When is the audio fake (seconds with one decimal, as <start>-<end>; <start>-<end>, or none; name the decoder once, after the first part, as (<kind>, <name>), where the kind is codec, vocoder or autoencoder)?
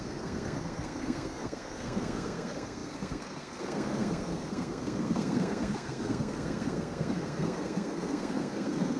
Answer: 0.0-9.0 (codec, SNAC)